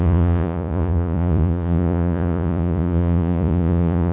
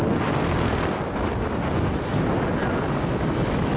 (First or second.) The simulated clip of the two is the first